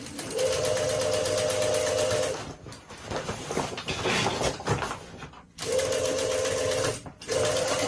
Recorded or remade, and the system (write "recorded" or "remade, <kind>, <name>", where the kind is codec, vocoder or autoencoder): recorded